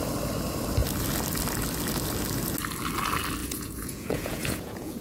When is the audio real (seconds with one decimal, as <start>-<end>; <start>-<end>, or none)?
0.0-3.4